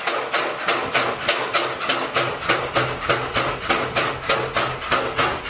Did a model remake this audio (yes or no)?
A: no